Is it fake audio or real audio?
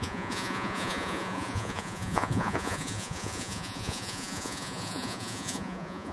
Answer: fake